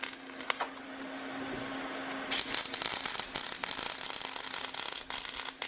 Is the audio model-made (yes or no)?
no